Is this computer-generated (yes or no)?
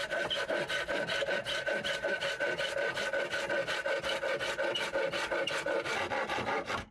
no